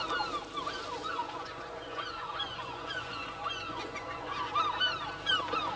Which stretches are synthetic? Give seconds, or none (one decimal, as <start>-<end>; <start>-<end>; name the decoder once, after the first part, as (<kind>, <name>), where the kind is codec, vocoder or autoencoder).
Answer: 1.0-4.5 (vocoder, Vocos)